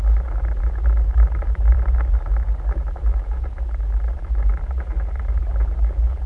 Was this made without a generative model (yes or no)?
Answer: yes